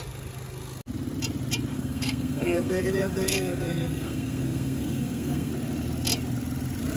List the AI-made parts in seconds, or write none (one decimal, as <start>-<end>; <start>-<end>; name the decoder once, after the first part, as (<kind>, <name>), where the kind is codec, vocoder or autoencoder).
1.7-5.5 (codec, SNAC)